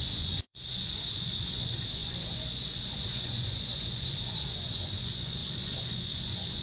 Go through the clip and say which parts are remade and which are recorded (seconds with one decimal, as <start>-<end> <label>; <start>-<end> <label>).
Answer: 0.0-6.6 remade